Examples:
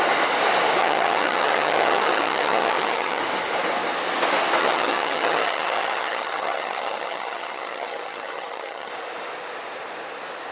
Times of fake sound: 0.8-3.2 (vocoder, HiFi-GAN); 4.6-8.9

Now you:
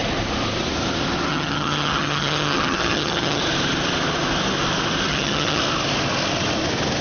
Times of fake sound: 1.3-3.4 (vocoder, HiFi-GAN); 5.1-5.6

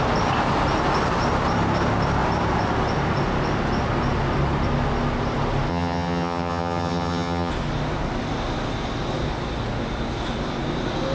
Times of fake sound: 5.7-7.5 (vocoder, HiFi-GAN)

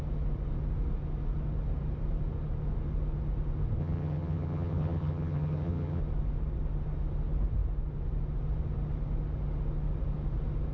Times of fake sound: 3.8-6.0 (vocoder, HiFi-GAN)

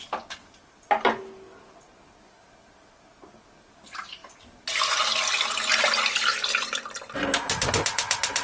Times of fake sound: none